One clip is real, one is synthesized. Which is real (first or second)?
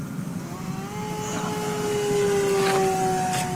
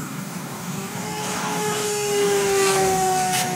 first